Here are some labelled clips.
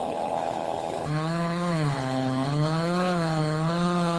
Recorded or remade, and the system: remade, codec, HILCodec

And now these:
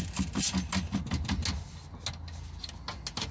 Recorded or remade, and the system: recorded